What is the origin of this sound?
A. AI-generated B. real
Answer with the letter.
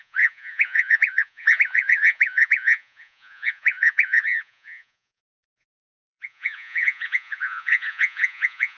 A